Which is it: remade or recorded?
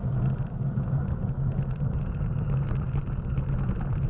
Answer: recorded